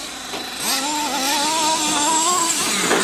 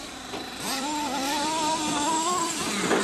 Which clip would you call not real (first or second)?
second